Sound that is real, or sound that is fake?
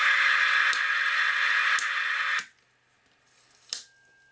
real